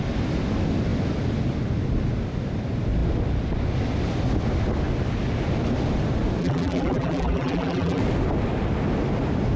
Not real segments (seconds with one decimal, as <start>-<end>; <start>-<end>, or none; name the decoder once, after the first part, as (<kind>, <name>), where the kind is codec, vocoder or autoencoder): 6.4-8.0 (vocoder, BigVGAN v2)